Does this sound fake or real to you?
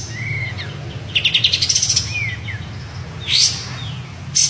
real